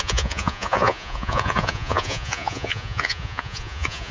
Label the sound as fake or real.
fake